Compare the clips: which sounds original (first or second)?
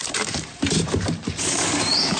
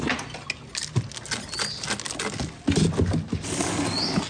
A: second